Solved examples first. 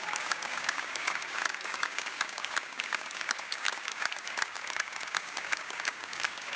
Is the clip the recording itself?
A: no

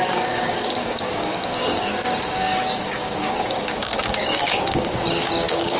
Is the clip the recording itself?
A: no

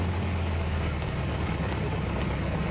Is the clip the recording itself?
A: no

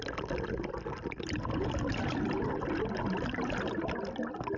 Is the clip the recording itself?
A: yes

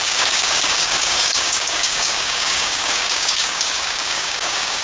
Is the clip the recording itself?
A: no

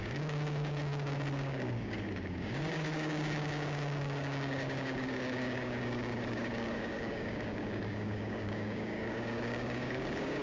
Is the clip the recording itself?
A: no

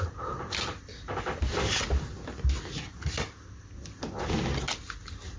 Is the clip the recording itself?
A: yes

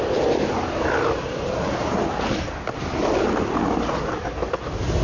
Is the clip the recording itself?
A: yes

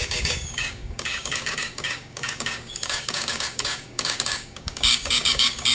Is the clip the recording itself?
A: no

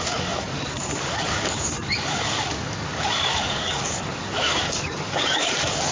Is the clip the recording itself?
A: no